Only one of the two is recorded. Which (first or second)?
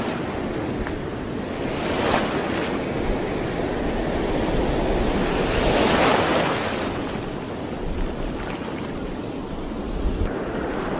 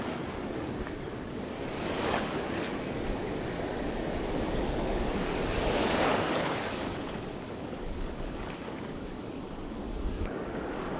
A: first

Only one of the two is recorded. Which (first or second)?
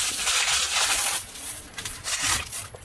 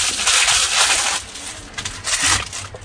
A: second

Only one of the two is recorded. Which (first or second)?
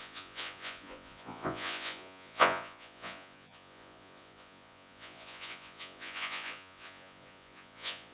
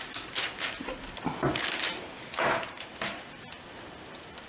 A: second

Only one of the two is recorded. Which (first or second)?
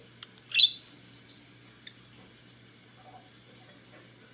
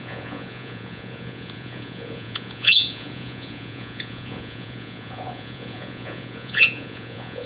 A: first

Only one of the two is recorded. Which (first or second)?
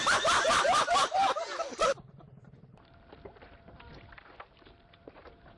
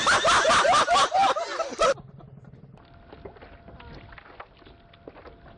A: second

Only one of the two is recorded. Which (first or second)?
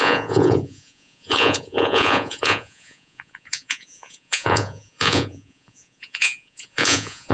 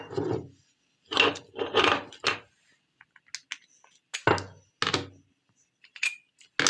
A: second